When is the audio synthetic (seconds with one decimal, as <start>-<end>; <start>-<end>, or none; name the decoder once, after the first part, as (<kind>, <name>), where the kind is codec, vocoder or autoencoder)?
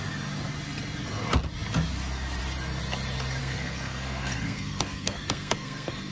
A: 3.4-6.1 (codec, SNAC)